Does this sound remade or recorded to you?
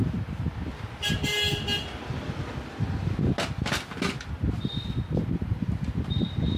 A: recorded